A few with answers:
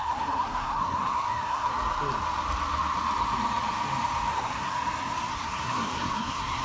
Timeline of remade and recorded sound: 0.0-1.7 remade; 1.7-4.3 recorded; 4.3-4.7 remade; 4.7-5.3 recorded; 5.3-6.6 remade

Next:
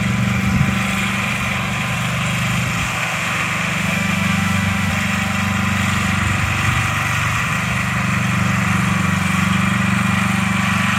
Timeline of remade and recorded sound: 0.0-2.8 recorded; 2.8-4.9 remade; 4.9-11.0 recorded